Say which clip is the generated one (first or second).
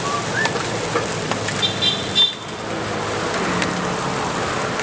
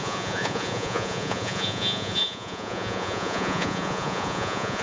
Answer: second